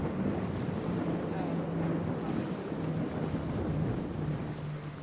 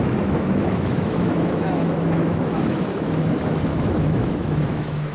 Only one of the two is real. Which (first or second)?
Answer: first